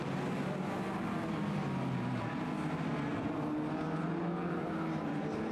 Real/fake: real